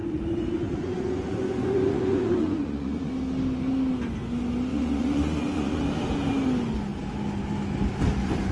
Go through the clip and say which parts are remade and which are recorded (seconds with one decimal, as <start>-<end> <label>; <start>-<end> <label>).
0.0-3.1 remade; 3.1-4.7 recorded; 4.7-5.8 remade; 5.8-8.5 recorded